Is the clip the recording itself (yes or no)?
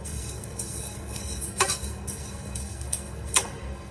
no